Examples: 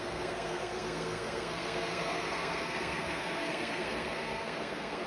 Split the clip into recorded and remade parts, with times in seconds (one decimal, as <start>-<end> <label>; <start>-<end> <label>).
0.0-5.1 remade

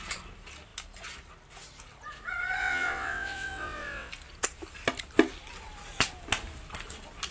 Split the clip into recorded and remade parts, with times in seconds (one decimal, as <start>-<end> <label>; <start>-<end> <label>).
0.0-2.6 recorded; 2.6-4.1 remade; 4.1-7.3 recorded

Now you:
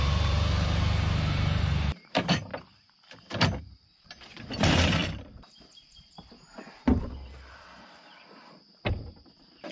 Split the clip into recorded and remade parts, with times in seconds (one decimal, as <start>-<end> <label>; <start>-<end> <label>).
0.0-2.5 remade; 2.5-3.6 recorded; 3.6-9.7 remade